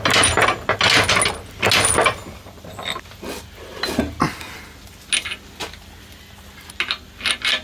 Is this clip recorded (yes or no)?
yes